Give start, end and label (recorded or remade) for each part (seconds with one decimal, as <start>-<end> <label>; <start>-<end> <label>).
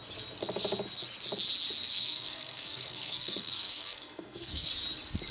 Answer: 0.0-1.9 recorded; 1.9-4.7 remade; 4.7-5.3 recorded